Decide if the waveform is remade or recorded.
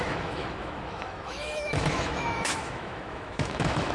remade